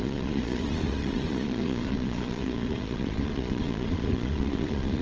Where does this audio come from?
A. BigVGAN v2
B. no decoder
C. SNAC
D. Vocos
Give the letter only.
D